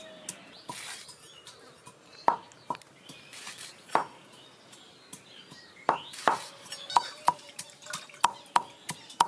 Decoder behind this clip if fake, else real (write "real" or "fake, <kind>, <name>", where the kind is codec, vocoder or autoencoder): real